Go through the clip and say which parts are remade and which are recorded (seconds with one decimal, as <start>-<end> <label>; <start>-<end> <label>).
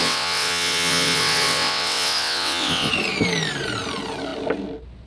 0.0-2.9 remade; 2.9-5.1 recorded